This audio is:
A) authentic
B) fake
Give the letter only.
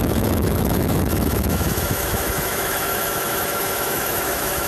B